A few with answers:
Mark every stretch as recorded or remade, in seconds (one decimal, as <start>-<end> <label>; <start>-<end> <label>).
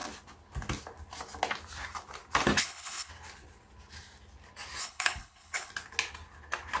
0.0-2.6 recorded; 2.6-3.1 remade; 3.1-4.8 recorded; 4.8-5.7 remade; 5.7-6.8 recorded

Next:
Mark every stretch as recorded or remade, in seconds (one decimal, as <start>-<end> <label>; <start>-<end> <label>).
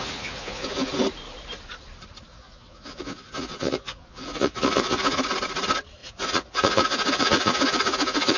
0.0-0.9 remade; 0.9-2.3 recorded; 2.3-5.2 remade; 5.2-6.0 recorded; 6.0-8.4 remade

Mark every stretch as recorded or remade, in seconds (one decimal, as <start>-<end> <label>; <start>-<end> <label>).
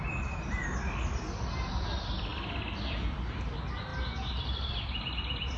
0.0-5.6 recorded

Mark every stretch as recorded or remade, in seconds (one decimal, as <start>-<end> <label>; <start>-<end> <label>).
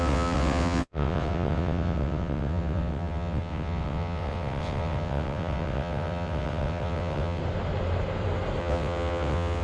0.0-7.4 remade; 7.4-8.6 recorded; 8.6-9.6 remade